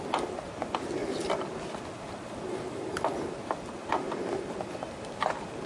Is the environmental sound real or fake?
real